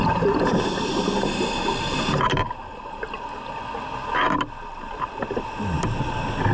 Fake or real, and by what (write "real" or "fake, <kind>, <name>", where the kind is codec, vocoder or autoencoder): real